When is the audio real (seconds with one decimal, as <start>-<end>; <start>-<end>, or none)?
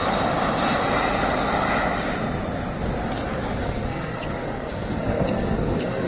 0.0-3.6